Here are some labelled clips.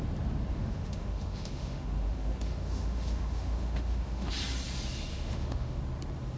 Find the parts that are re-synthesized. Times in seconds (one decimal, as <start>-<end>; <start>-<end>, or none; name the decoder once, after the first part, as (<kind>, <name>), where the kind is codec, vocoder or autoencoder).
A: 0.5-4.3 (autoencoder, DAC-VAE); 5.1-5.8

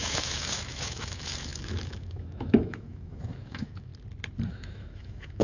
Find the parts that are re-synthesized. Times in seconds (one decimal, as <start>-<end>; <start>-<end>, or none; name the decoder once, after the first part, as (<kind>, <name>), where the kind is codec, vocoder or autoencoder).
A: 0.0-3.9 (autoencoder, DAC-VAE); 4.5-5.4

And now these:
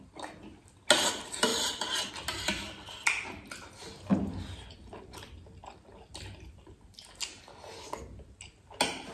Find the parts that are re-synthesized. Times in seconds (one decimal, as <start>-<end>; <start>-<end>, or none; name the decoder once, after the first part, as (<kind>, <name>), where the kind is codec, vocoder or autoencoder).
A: 1.5-2.1 (vocoder, BigVGAN v2)